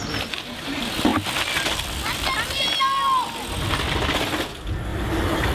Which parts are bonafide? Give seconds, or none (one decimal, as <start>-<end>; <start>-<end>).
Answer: 0.0-4.9